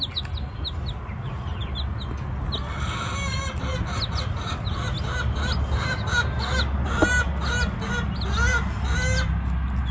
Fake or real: real